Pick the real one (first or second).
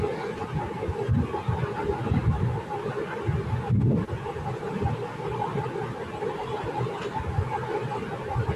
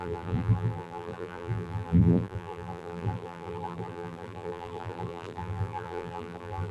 first